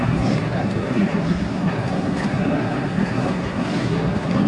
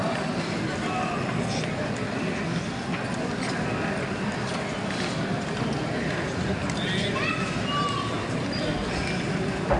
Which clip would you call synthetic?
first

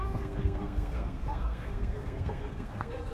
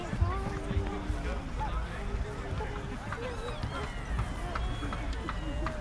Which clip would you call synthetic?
first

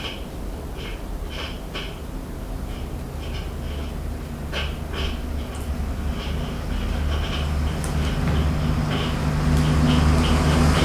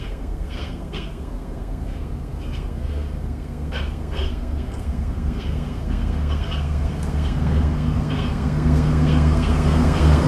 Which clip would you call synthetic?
second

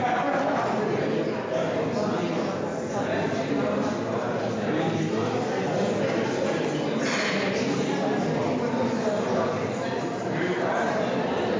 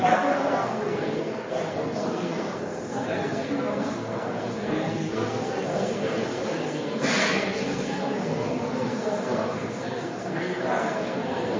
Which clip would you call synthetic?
second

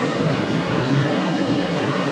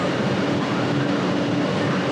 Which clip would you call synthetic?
first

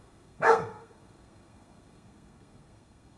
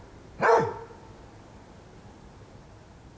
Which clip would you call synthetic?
first